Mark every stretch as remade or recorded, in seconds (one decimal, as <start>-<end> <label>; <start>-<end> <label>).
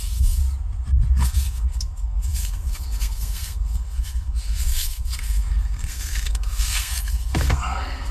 0.0-0.4 remade; 0.4-1.2 recorded; 1.2-8.1 remade